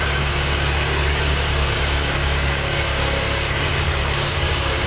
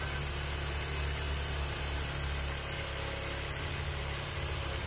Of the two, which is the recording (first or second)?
second